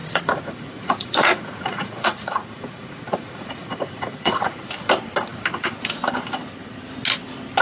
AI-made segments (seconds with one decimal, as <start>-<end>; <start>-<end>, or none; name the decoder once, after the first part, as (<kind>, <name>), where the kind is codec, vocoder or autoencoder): 0.0-4.6 (vocoder, Vocos)